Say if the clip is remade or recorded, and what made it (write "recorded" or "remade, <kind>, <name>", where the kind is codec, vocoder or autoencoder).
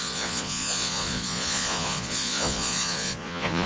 remade, vocoder, Vocos